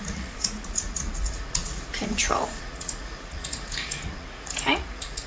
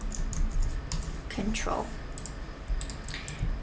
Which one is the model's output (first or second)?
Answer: first